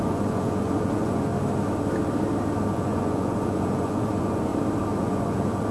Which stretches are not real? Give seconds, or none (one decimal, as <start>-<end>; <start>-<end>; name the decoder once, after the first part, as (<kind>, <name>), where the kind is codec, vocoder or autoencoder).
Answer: 0.0-1.3 (vocoder, Vocos); 2.7-4.5; 5.0-5.7